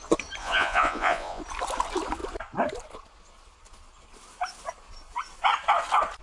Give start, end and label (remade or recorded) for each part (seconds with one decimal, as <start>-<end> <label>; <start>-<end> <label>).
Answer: 0.0-0.4 recorded; 0.4-1.4 remade; 1.4-6.2 recorded